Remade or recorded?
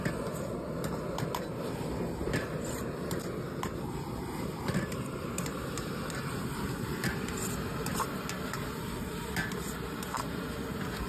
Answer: recorded